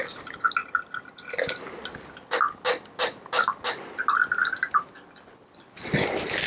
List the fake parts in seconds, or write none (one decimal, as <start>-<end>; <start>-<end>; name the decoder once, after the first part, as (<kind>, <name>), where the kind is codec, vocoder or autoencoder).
none